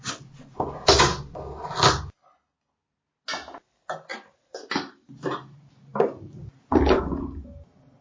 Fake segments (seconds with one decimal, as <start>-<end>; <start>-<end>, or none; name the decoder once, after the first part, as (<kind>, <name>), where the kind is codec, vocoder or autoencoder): 1.1-1.6 (vocoder, BigVGAN v2); 4.1-6.6